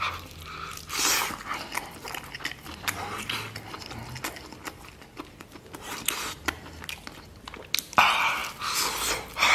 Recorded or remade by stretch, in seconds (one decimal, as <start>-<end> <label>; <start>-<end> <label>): 0.0-9.5 recorded